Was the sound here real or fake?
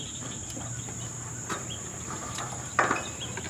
fake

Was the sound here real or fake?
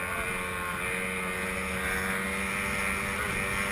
real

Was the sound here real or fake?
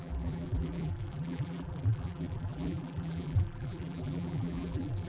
fake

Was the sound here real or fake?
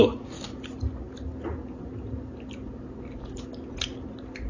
real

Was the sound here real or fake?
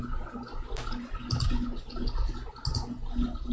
real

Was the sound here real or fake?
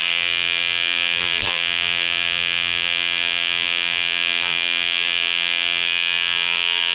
fake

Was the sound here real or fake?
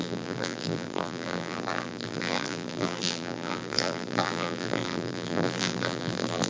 fake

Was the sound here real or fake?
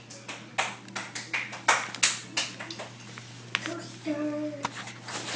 real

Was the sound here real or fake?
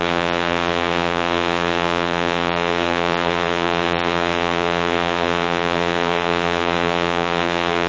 fake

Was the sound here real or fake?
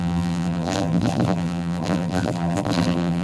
fake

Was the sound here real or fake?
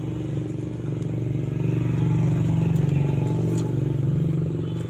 real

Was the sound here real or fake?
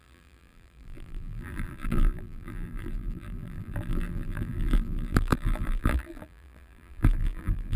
fake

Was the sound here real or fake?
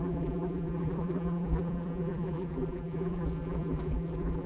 fake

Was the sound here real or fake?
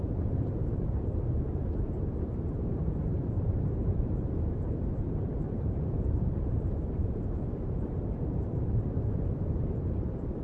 fake